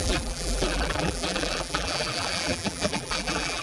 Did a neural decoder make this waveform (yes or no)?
yes